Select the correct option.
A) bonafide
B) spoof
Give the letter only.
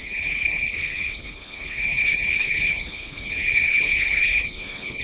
B